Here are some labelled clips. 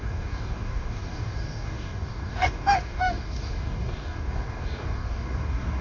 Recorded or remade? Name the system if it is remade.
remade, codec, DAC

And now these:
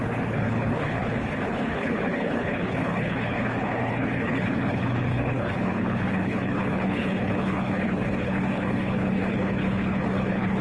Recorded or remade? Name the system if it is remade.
remade, codec, HILCodec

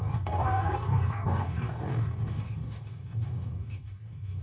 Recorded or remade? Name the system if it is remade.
remade, codec, DAC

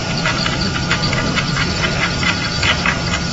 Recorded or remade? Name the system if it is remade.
recorded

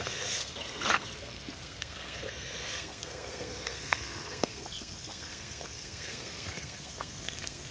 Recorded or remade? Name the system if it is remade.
remade, codec, SNAC